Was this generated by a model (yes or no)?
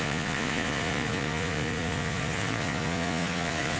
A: yes